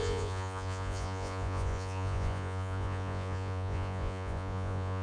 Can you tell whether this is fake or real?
fake